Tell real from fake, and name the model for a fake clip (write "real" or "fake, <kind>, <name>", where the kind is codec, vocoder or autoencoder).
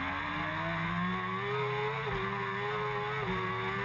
real